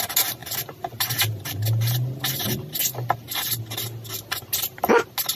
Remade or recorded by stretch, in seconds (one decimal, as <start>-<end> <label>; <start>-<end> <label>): 0.0-5.3 recorded